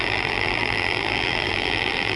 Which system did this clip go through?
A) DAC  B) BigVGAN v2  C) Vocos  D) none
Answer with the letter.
B